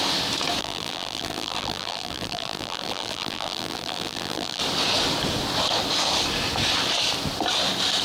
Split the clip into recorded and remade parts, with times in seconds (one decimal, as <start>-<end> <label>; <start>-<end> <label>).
0.0-0.6 recorded; 0.6-4.6 remade; 4.6-8.0 recorded